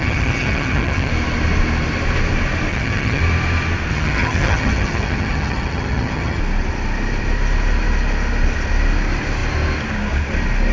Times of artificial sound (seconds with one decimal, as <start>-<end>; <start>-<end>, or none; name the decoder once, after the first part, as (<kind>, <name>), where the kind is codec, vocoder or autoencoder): 0.0-1.1 (vocoder, HiFi-GAN); 2.7-3.2; 3.9-6.4